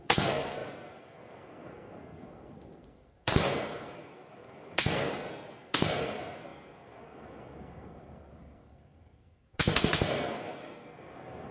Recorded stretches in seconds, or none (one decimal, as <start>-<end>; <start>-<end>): none